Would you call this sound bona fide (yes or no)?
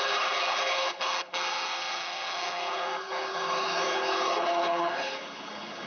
no